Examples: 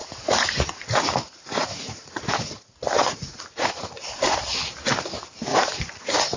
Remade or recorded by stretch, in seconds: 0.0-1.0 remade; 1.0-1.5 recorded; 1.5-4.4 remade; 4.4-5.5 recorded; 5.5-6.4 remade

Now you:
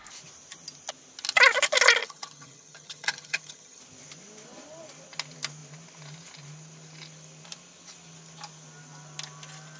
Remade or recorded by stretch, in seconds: 0.0-2.0 recorded; 2.0-3.8 remade; 3.8-9.8 recorded

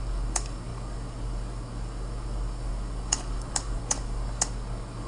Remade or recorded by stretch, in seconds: 0.0-5.1 remade